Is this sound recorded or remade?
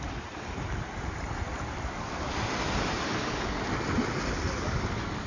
recorded